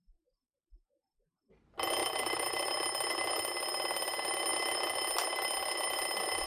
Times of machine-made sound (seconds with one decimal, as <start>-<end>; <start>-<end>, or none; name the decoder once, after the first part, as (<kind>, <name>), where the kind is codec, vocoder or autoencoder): 2.0-2.7 (vocoder, BigVGAN v2)